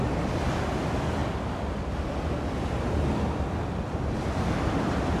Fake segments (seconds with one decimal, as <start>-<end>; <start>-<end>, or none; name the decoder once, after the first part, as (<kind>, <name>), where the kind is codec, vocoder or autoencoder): none